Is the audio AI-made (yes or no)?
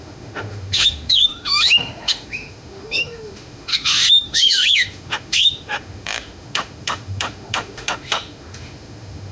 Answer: yes